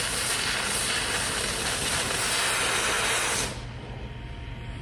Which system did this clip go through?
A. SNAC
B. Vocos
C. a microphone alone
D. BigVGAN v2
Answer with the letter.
C